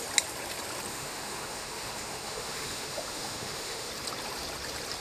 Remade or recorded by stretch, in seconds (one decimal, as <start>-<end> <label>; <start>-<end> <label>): 0.0-0.9 recorded; 0.9-3.9 remade; 3.9-5.0 recorded